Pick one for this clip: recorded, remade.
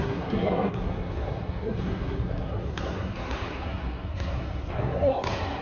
remade